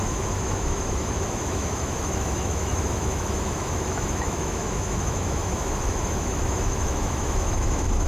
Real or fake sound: fake